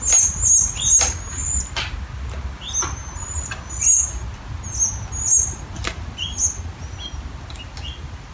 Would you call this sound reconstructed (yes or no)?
no